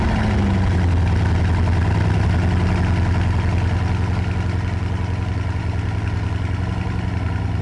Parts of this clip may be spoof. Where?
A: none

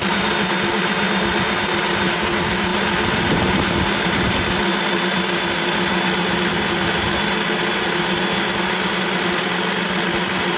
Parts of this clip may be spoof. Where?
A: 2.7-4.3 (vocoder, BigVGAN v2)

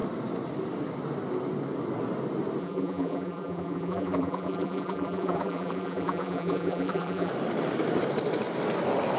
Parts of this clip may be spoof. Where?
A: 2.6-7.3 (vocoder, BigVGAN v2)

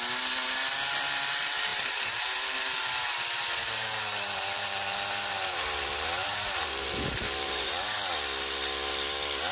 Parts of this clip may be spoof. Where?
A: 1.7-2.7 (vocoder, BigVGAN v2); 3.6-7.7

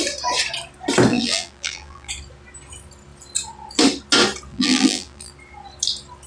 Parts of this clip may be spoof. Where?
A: 1.1-2.1 (vocoder, BigVGAN v2); 4.5-5.3

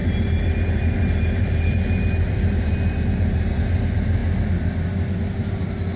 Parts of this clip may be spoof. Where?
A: 0.0-3.6 (vocoder, BigVGAN v2)